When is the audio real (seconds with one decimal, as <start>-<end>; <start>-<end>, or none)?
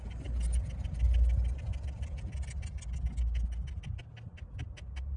0.0-1.7; 2.5-5.2